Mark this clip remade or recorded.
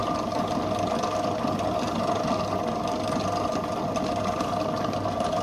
recorded